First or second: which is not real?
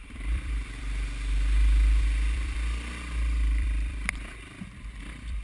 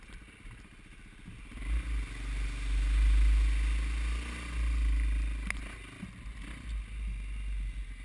first